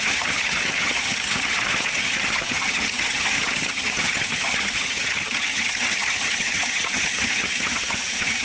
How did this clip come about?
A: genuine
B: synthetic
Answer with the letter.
B